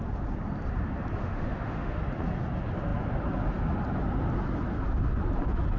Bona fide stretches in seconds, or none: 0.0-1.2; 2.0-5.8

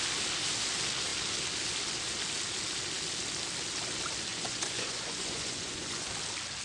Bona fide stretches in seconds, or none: 0.0-4.3; 6.1-6.6

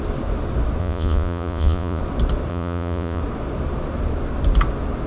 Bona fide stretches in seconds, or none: 0.0-0.8; 2.0-2.5; 3.2-5.1

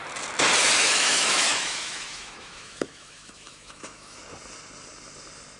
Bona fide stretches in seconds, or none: 0.0-0.8; 4.2-5.6

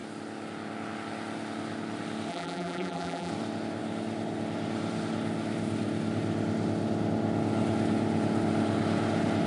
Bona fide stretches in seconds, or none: 0.0-2.3; 3.3-9.5

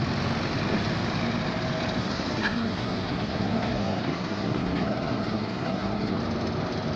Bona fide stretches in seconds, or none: 0.0-2.0; 6.2-7.0